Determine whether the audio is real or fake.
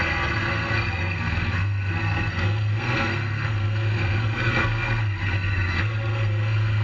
fake